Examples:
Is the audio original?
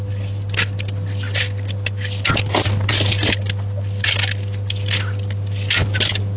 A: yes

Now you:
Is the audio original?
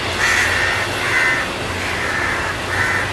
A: yes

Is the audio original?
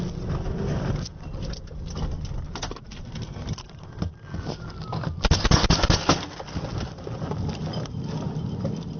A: yes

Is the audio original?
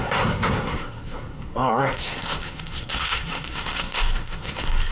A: no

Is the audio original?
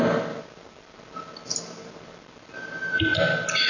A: yes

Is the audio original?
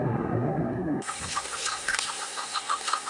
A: no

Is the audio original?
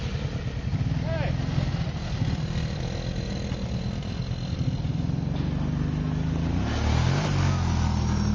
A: yes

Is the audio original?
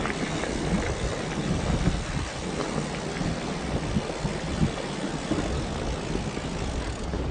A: yes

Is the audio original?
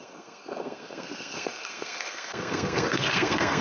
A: no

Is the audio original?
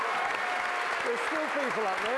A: yes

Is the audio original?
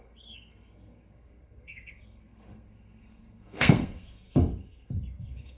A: no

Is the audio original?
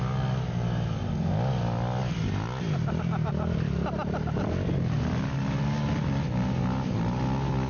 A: yes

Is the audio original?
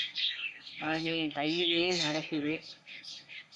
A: no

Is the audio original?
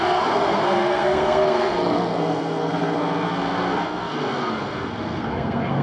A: no